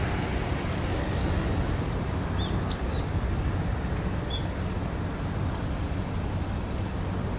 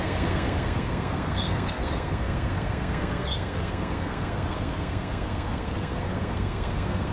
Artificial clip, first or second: second